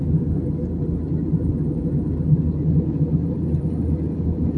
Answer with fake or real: real